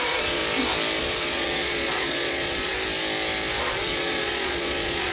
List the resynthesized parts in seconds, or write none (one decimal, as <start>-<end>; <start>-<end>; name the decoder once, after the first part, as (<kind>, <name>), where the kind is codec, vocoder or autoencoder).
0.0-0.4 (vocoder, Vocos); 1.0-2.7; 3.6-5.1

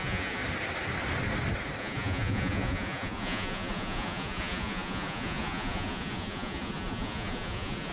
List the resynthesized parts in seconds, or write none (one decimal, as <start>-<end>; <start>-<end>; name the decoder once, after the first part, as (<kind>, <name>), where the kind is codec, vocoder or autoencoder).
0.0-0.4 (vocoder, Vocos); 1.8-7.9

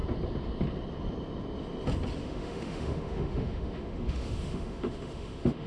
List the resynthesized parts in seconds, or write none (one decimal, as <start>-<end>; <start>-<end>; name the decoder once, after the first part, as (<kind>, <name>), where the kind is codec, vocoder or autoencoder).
2.2-5.7 (autoencoder, DAC-VAE)

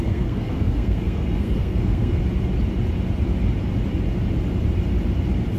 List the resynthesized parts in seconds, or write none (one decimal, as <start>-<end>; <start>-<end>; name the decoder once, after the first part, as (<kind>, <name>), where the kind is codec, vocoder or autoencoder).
0.0-2.2 (codec, SNAC)

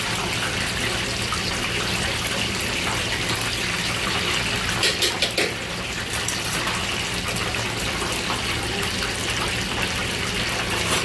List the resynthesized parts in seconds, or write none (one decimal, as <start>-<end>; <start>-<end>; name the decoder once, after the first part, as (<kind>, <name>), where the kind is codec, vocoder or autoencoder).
none

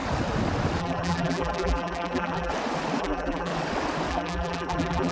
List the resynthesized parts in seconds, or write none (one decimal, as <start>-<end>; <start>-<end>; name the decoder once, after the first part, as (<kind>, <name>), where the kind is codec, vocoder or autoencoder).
0.8-2.5 (vocoder, BigVGAN v2); 3.0-3.5; 4.1-5.1